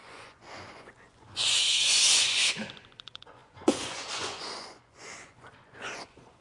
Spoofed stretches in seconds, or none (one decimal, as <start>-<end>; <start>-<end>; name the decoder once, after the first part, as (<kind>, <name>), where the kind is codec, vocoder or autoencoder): 0.0-6.4 (vocoder, Vocos)